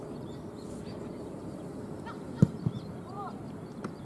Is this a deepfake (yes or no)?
no